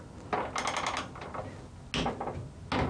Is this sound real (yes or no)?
yes